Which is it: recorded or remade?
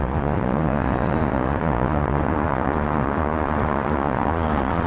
remade